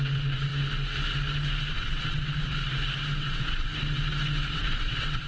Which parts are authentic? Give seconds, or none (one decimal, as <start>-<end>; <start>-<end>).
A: 0.5-1.7; 2.6-3.2; 3.7-4.4

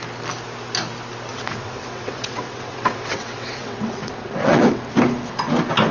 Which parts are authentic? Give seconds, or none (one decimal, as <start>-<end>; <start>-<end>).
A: 0.0-1.3; 4.8-5.9

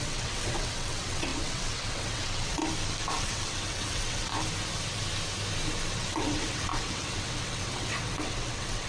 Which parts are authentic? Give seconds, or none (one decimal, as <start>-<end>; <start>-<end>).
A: 2.6-3.2; 4.3-5.9

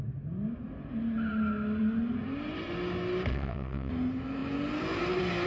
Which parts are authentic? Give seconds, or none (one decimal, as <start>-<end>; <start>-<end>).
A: 0.0-3.3; 3.9-5.5

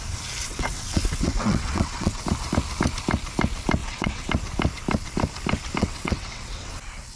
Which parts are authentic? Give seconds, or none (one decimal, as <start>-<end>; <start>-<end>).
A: 0.0-0.4; 2.2-3.8; 4.3-5.8; 6.7-7.2

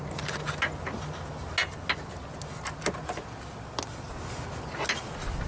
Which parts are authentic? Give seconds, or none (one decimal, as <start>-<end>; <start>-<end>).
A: 0.0-5.5

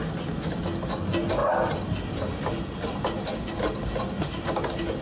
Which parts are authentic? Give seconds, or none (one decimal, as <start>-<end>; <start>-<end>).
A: 0.0-5.0

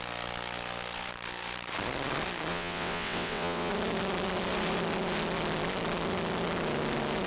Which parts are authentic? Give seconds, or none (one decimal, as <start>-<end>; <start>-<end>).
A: 0.0-2.5; 3.7-7.3